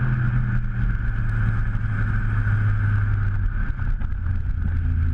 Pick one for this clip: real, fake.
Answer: real